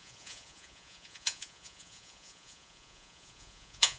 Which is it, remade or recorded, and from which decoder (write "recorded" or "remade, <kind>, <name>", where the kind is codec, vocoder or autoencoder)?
remade, vocoder, Vocos